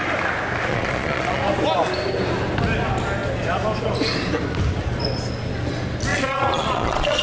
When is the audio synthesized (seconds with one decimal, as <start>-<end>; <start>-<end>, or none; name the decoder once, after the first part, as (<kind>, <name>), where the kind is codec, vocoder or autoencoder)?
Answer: 0.7-1.4 (vocoder, Vocos); 6.1-7.2